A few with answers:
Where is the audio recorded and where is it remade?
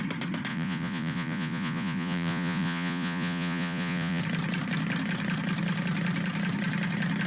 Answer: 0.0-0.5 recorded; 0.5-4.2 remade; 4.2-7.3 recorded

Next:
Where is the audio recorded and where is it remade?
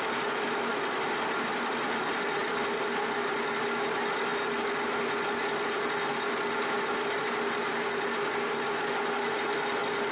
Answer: 0.0-10.1 recorded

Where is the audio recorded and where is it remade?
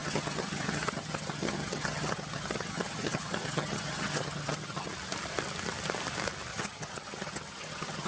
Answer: 0.0-4.9 remade; 4.9-6.5 recorded; 6.5-8.1 remade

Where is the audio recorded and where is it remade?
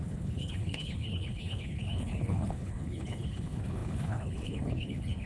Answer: 0.0-5.3 remade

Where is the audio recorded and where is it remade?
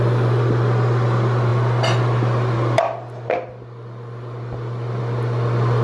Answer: 0.0-5.8 recorded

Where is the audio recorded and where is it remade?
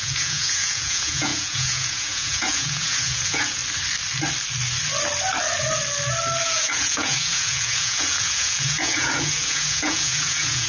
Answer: 0.0-3.6 remade; 3.6-6.4 recorded; 6.4-10.7 remade